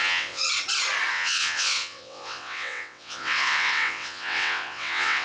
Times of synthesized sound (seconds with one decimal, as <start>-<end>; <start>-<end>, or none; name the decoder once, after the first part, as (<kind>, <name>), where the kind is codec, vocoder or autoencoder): 0.0-0.4 (vocoder, WaveNeXt); 1.1-5.2

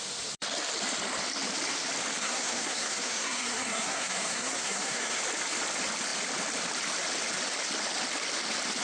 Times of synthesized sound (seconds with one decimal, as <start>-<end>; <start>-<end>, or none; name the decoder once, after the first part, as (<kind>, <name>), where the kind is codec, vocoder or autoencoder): 2.2-5.2 (codec, SNAC)